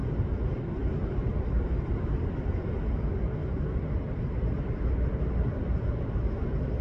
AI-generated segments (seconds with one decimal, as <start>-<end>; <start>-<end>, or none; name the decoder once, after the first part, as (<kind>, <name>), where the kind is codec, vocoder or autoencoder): none